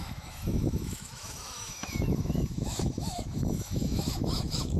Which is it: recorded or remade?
remade